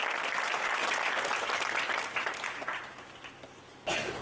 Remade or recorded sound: recorded